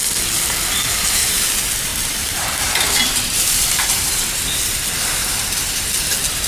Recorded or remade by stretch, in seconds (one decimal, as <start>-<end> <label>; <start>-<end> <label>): 0.0-1.9 recorded; 1.9-4.4 remade; 4.4-5.2 recorded; 5.2-5.7 remade; 5.7-6.5 recorded